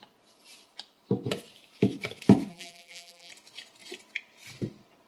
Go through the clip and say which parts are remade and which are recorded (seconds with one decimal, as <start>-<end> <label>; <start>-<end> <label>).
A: 0.0-2.5 recorded; 2.5-3.3 remade; 3.3-5.1 recorded